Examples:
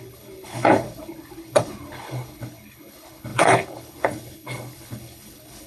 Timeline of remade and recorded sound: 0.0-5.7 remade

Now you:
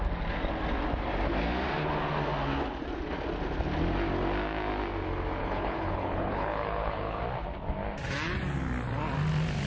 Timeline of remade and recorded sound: 0.0-5.4 recorded; 5.4-7.2 remade; 7.2-9.7 recorded

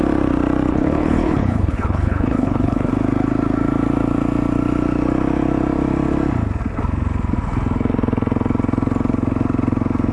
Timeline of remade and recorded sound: 0.0-0.7 recorded; 0.7-2.9 remade; 2.9-10.1 recorded

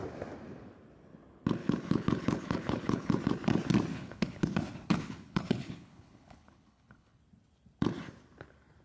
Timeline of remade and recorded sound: 0.0-1.6 recorded; 1.6-3.2 remade; 3.2-3.9 recorded; 3.9-7.2 remade; 7.2-8.8 recorded

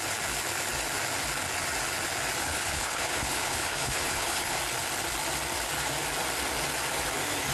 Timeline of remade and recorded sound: 0.0-2.4 recorded; 2.4-4.6 remade; 4.6-7.5 recorded

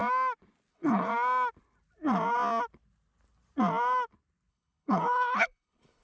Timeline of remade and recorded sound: 0.0-0.7 recorded; 0.7-1.1 remade; 1.1-4.5 recorded; 4.5-6.0 remade